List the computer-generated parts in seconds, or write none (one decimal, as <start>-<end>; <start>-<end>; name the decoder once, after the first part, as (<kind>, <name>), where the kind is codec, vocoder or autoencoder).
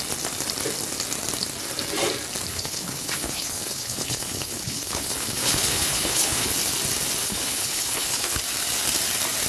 2.5-6.5 (codec, HILCodec); 7.2-8.4